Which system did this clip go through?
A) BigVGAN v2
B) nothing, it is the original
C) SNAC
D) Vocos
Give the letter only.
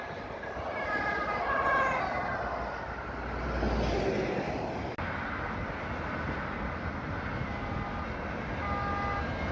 B